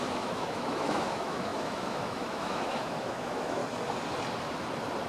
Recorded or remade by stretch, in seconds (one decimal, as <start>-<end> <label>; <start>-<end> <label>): 0.0-3.6 remade; 3.6-5.1 recorded